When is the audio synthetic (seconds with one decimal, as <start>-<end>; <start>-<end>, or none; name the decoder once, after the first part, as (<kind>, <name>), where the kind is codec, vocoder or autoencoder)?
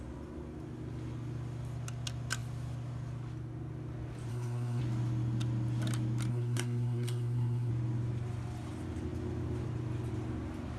4.3-4.8 (codec, SNAC); 6.3-7.7